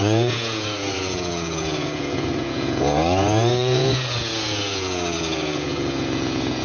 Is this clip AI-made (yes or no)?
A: yes